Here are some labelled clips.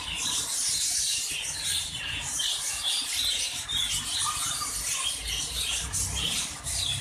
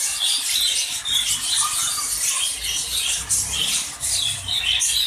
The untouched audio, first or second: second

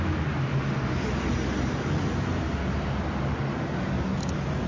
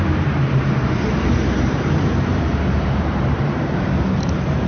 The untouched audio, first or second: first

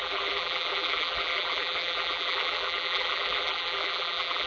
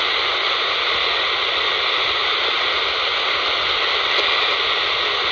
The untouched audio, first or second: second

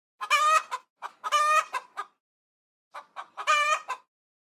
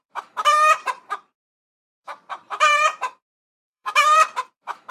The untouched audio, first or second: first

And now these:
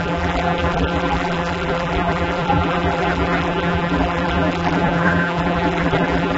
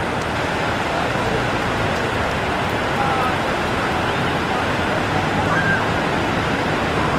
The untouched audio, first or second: second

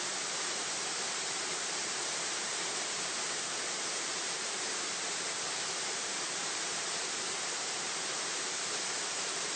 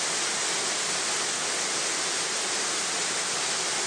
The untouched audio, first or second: second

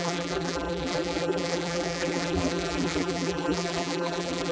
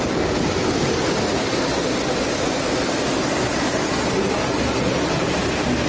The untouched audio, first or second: second